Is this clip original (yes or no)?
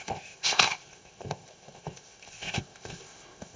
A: no